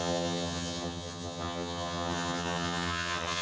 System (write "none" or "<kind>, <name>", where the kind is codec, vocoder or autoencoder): vocoder, HiFi-GAN